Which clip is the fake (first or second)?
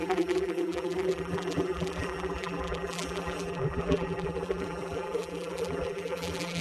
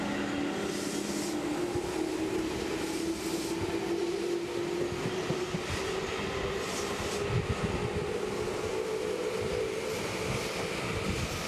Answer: first